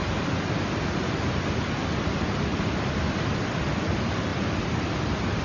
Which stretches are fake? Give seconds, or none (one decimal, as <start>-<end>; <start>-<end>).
none